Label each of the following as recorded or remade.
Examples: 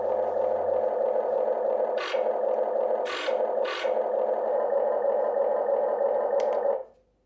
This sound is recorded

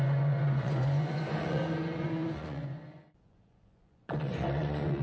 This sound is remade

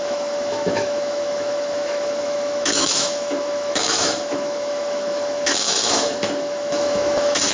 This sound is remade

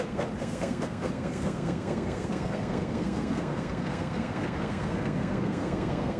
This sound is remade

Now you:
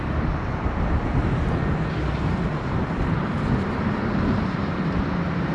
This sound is recorded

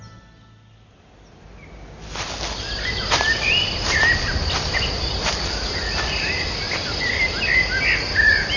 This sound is recorded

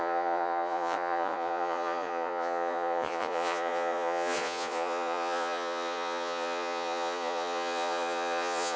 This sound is remade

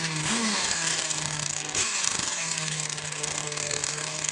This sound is remade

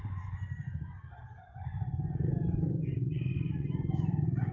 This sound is remade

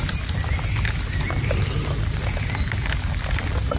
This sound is recorded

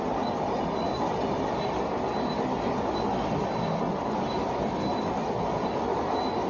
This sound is recorded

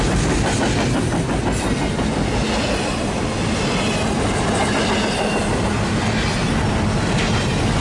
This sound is recorded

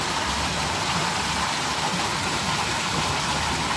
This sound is recorded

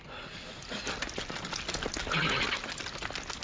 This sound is recorded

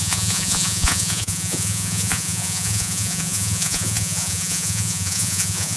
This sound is remade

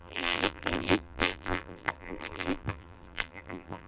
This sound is remade